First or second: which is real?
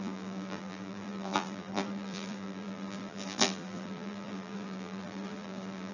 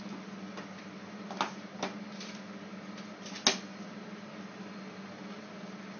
second